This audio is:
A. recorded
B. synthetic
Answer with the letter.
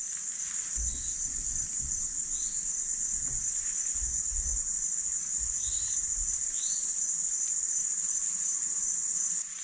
A